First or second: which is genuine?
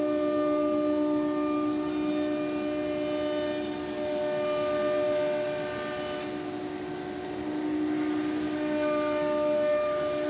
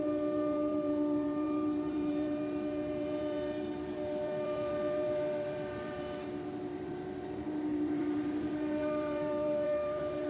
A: first